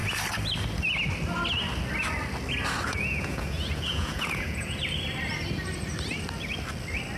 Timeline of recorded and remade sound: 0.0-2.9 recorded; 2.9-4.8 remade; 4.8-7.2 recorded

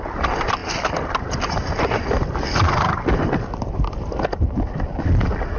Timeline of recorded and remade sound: 0.0-5.6 recorded

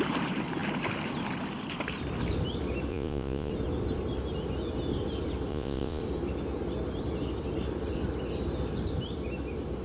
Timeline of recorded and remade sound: 0.0-2.9 recorded; 2.9-3.5 remade; 3.5-5.5 recorded; 5.5-6.0 remade; 6.0-9.8 recorded

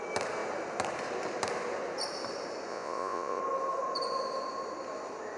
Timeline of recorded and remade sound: 0.0-2.7 recorded; 2.7-3.4 remade; 3.4-5.4 recorded

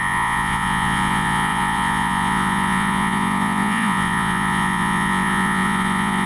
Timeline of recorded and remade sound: 0.0-6.3 remade